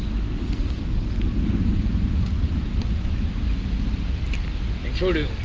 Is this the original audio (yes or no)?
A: yes